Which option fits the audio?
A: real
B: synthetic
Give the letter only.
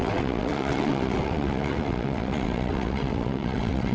B